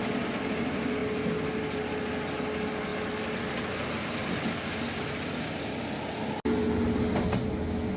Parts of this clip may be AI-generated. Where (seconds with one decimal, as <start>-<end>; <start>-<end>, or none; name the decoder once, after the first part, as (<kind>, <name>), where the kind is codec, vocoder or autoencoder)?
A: none